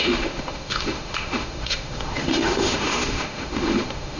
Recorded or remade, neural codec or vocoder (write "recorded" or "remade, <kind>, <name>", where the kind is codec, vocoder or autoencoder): remade, autoencoder, DAC-VAE